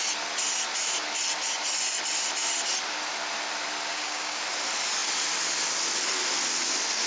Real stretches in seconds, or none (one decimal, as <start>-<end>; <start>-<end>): 0.0-3.9; 4.4-7.1